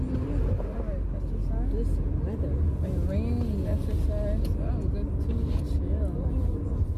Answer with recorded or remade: recorded